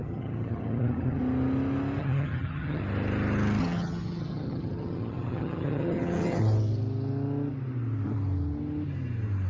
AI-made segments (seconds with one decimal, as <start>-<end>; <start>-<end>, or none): 0.0-1.2; 2.0-2.8; 3.6-6.4